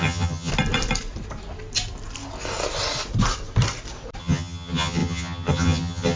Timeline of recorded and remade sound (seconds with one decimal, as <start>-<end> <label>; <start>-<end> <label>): 0.0-0.5 remade; 0.5-4.2 recorded; 4.2-6.2 remade

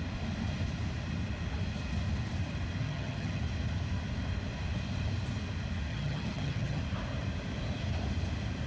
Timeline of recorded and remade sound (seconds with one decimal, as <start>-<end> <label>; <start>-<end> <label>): 0.0-2.8 recorded; 2.8-3.4 remade; 3.4-5.9 recorded; 5.9-6.8 remade; 6.8-8.7 recorded

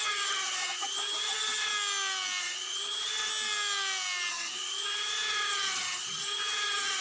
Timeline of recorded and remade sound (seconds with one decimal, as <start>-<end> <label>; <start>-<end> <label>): 0.0-1.7 remade; 1.7-2.4 recorded; 2.4-3.3 remade; 3.3-4.3 recorded; 4.3-7.0 remade

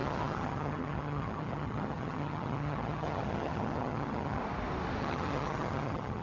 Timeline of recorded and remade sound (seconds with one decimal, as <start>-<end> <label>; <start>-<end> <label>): 0.0-4.4 remade; 4.4-5.0 recorded; 5.0-6.2 remade